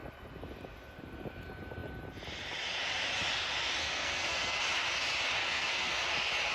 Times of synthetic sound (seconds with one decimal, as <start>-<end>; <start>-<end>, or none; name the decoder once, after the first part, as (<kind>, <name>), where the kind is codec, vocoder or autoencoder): 3.8-4.6 (codec, SNAC); 5.4-5.9